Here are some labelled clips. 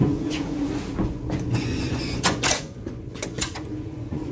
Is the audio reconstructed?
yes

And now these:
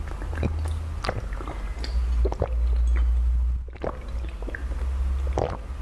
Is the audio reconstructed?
no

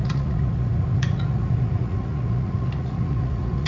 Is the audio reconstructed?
yes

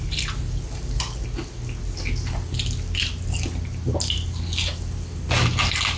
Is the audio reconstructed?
no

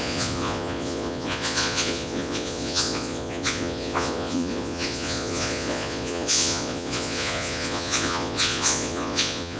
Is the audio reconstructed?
yes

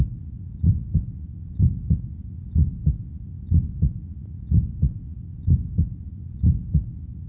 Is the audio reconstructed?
yes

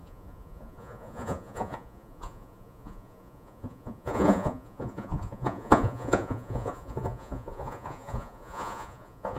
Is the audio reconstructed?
yes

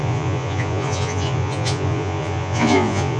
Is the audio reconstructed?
yes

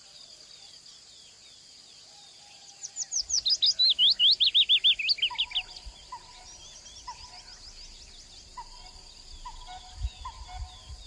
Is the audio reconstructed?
no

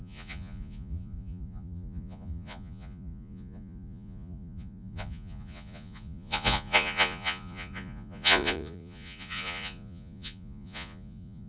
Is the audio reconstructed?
yes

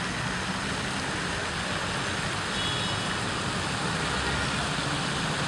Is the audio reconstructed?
no